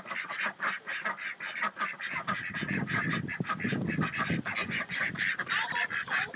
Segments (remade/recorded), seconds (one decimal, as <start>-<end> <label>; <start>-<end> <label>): 0.0-4.6 recorded; 4.6-5.1 remade; 5.1-6.4 recorded